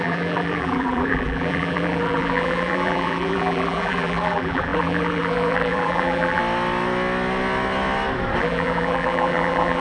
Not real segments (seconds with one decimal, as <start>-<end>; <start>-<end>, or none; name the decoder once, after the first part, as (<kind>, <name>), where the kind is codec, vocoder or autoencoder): 0.0-6.4 (vocoder, BigVGAN v2); 8.4-9.8